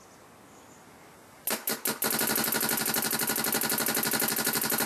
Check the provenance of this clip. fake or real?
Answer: real